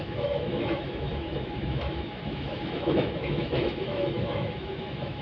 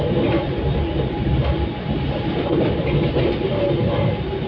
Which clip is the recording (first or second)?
second